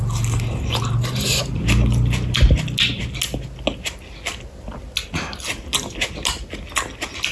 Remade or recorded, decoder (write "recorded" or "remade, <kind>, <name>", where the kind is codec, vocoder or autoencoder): recorded